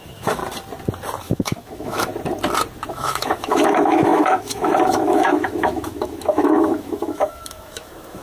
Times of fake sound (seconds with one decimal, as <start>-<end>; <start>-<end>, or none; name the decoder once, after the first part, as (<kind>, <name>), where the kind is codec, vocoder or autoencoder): 0.0-0.4 (autoencoder, DAC-VAE); 1.2-2.1; 2.9-8.2